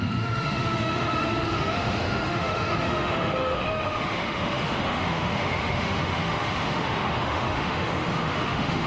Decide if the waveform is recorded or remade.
remade